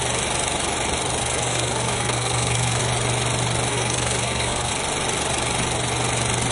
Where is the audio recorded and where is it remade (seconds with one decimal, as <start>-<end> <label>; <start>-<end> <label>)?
0.0-1.2 recorded; 1.2-2.8 remade; 2.8-3.7 recorded; 3.7-4.7 remade; 4.7-6.5 recorded